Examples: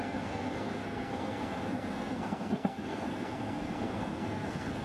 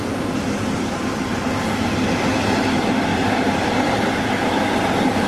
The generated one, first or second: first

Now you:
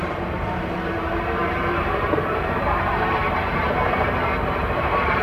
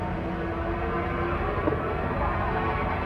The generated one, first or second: first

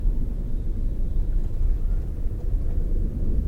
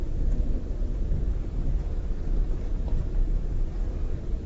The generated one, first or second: first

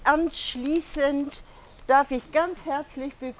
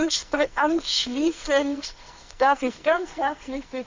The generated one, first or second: second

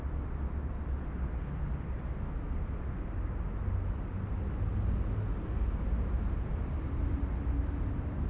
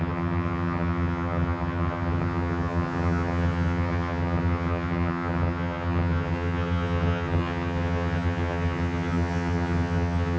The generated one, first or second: second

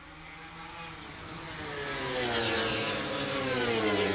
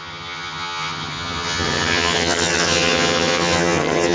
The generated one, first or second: second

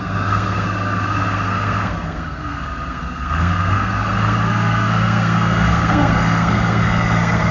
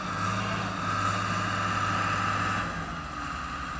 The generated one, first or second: first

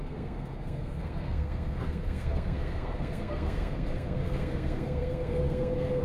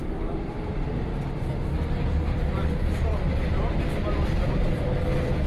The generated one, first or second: first